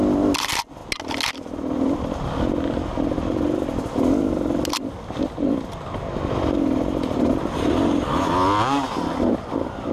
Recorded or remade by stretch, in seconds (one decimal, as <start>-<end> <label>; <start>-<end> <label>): 0.0-9.9 recorded